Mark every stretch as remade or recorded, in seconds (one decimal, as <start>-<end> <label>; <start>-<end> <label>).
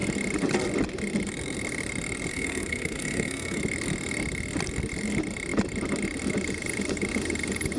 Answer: 0.0-2.3 recorded; 2.3-3.6 remade; 3.6-7.8 recorded